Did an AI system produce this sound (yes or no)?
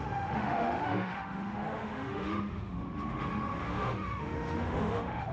yes